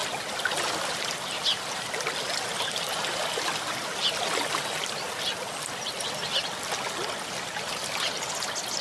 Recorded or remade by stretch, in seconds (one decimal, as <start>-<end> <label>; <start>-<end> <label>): 0.0-8.8 recorded